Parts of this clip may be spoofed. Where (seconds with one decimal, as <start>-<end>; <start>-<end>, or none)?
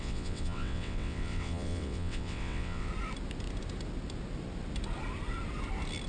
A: 0.0-2.9